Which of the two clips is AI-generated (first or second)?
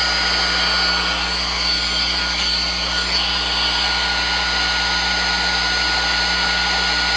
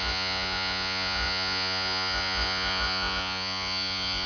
second